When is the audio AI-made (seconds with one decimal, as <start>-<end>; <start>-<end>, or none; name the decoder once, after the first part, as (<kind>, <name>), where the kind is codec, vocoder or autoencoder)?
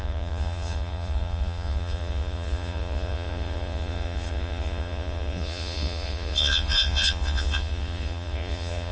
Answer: 0.0-8.9 (vocoder, Vocos)